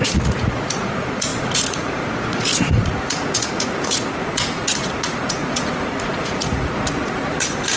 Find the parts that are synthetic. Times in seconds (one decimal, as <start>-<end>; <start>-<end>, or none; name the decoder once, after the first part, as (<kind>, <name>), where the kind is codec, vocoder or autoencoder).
0.0-7.8 (vocoder, Vocos)